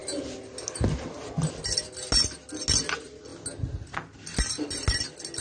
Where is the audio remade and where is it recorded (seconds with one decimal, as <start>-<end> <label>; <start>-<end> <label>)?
0.0-5.4 recorded